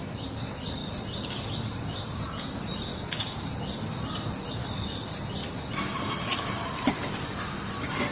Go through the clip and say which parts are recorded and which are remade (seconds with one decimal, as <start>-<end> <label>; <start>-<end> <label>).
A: 0.0-8.1 recorded